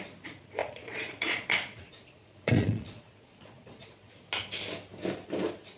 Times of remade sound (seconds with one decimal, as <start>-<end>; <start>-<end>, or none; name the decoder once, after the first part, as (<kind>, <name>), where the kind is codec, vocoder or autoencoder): 0.6-4.1 (vocoder, Vocos)